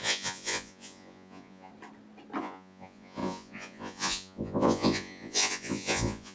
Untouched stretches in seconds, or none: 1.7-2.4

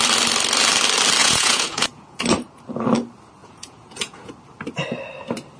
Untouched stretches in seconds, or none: 0.0-1.2; 2.2-3.4; 4.3-5.6

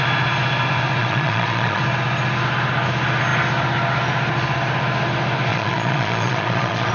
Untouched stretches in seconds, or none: 0.0-1.0; 1.8-5.5

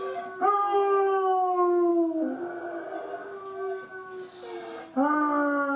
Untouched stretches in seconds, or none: 0.0-5.8

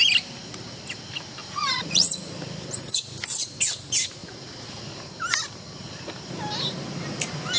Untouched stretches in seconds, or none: 0.0-1.4; 2.3-7.6

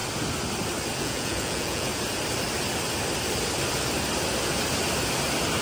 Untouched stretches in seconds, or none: 0.0-1.0; 1.9-5.6

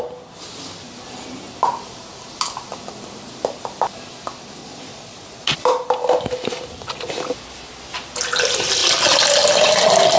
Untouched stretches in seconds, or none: 0.0-4.6; 5.6-10.2

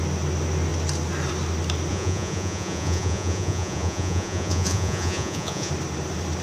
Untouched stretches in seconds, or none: 0.0-1.9; 5.7-6.4